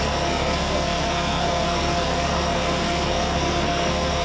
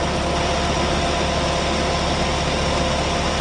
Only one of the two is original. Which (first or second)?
second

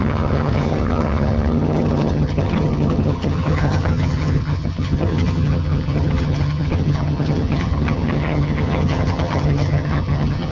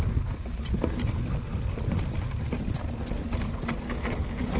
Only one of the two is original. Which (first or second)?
second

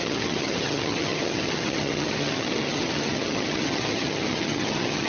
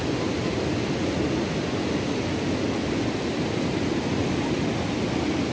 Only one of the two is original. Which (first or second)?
second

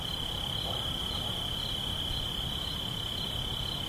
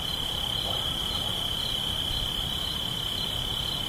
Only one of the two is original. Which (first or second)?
first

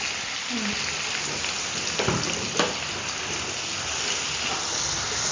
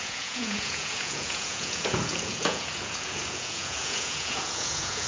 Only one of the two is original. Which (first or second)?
first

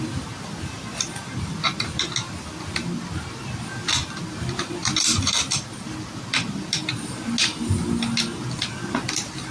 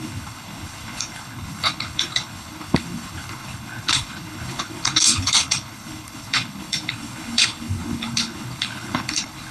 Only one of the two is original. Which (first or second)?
first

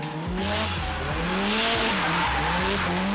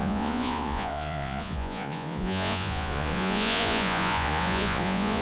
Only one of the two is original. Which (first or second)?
first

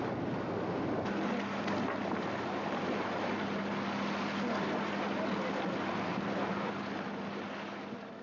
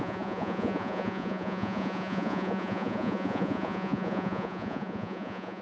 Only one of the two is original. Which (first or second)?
first